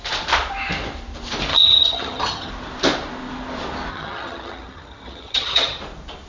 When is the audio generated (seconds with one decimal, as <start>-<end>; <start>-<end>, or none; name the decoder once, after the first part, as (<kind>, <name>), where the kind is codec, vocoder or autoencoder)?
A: 1.5-2.5 (vocoder, HiFi-GAN); 3.9-5.8